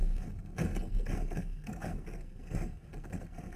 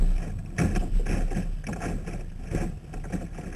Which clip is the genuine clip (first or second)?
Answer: second